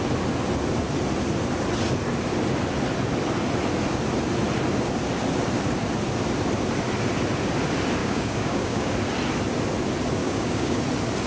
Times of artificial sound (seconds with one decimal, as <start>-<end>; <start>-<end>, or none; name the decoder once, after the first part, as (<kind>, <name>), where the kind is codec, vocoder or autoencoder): 8.0-8.9 (codec, DAC); 10.2-10.8